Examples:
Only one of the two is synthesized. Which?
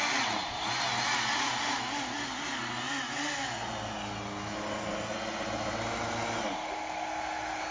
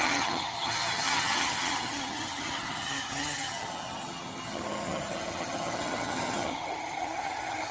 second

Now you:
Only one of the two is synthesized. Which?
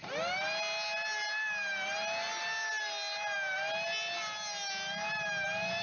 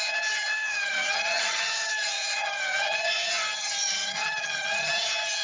second